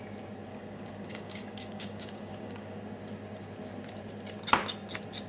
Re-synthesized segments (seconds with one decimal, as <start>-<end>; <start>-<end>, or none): 0.5-2.8